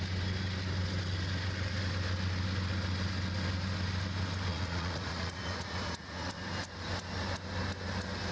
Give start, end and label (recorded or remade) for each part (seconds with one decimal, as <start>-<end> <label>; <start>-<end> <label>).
0.0-4.5 recorded; 4.5-6.3 remade; 6.3-8.3 recorded